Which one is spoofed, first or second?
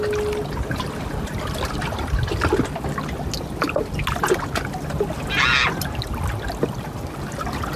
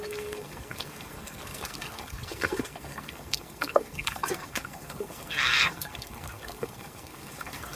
second